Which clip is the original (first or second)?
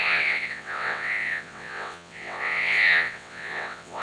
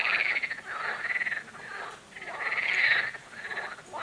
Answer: second